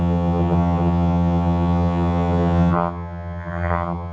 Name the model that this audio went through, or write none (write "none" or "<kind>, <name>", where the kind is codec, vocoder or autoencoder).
vocoder, HiFi-GAN